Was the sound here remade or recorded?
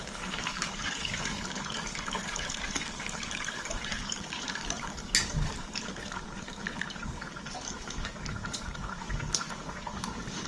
remade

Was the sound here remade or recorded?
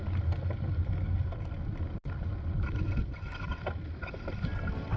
recorded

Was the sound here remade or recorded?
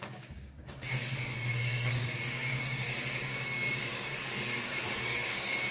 remade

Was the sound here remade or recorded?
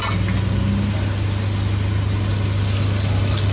recorded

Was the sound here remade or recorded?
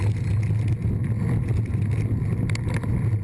recorded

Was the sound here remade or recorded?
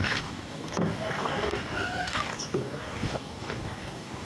remade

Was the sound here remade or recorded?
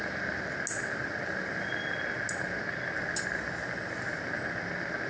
recorded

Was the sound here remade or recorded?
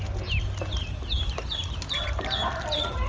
recorded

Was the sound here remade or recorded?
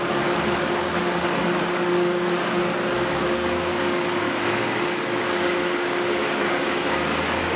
remade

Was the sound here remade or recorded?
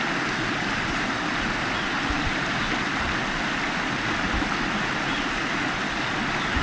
recorded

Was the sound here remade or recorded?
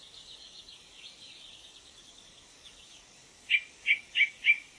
remade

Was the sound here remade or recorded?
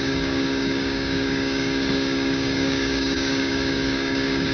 remade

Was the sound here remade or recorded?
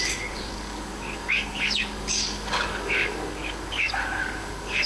remade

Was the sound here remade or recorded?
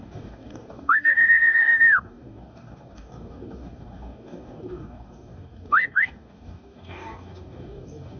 remade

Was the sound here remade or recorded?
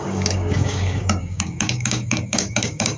remade